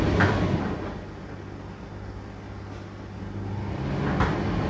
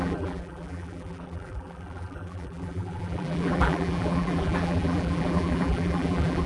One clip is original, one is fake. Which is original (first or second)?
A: first